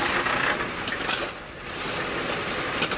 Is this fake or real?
real